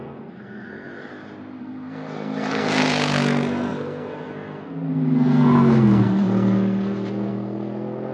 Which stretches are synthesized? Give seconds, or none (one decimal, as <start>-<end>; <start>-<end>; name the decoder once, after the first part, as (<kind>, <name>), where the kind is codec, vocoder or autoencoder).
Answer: 0.0-1.1 (codec, SNAC); 1.6-8.1